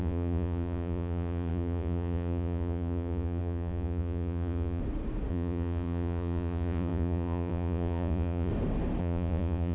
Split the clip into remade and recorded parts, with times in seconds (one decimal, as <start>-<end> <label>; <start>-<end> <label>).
0.0-4.8 remade; 4.8-5.3 recorded; 5.3-8.5 remade; 8.5-9.0 recorded; 9.0-9.7 remade